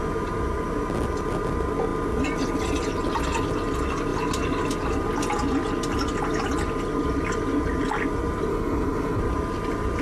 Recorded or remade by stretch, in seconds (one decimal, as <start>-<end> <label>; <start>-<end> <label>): 0.0-8.5 recorded; 8.5-9.2 remade; 9.2-10.0 recorded

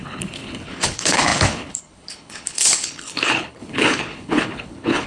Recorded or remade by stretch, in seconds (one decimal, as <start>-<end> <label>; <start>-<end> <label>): 0.0-5.1 remade

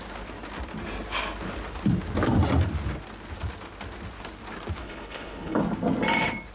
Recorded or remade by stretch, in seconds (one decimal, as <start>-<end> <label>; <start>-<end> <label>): 0.0-4.8 recorded; 4.8-5.6 remade; 5.6-6.5 recorded

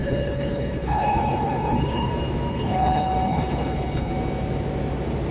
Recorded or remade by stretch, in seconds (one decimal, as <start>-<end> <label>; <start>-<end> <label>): 0.0-2.1 remade; 2.1-2.5 recorded; 2.5-4.1 remade; 4.1-5.3 recorded

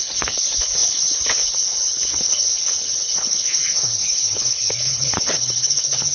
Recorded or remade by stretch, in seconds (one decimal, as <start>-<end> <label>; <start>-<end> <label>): 0.0-6.1 remade

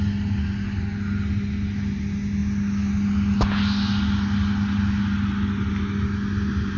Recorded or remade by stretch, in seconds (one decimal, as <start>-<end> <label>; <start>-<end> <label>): 0.0-6.8 recorded